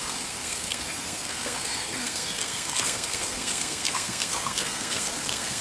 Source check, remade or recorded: remade